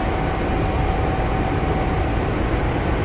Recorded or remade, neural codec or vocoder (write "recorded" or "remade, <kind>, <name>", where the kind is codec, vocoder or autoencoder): recorded